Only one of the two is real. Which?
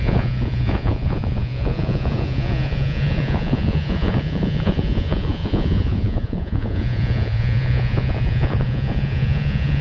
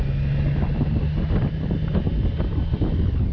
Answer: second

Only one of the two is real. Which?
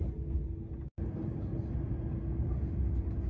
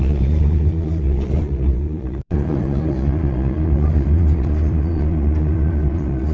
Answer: first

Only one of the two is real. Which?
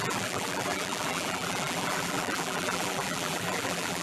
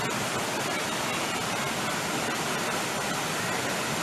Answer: second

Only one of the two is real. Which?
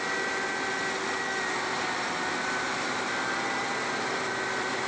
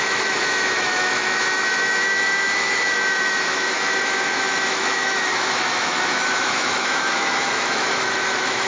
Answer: first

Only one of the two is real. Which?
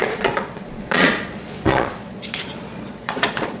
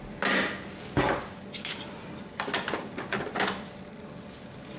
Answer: second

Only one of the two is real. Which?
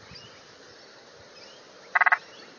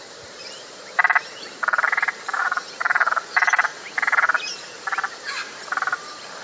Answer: first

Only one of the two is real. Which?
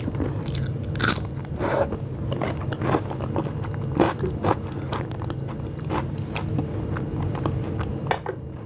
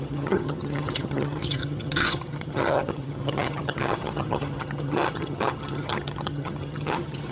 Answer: first